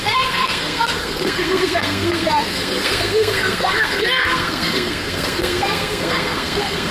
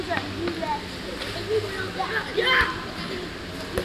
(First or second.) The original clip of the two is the second